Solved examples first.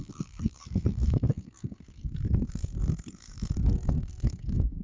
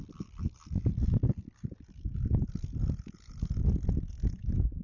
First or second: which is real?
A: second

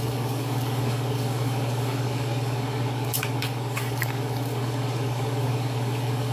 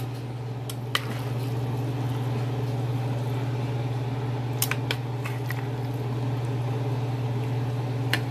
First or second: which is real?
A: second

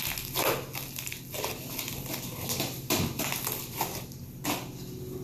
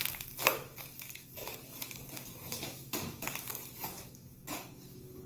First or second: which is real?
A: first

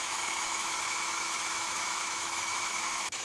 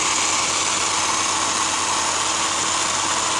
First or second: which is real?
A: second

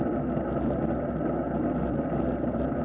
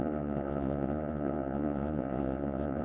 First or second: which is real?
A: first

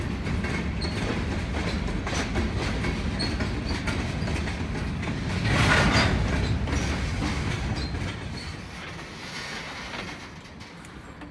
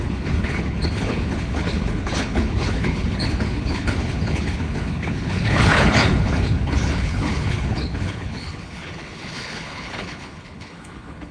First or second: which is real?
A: first